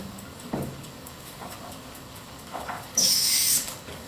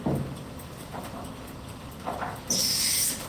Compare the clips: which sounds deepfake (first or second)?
first